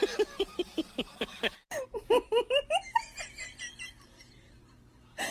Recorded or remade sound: recorded